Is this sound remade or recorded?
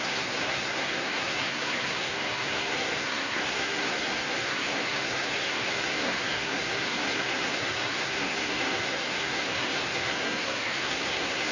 remade